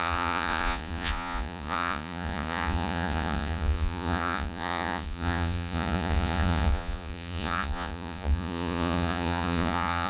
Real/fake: fake